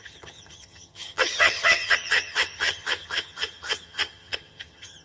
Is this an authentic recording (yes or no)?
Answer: no